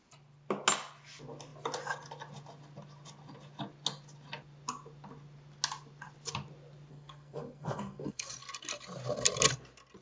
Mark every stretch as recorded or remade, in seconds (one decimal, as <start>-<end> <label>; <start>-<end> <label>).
0.0-6.9 recorded; 6.9-8.3 remade; 8.3-10.0 recorded